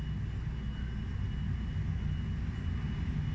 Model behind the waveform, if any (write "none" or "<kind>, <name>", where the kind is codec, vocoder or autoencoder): none